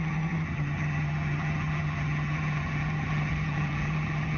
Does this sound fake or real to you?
fake